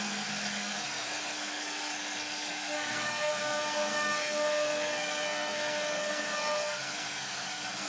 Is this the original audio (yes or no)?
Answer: no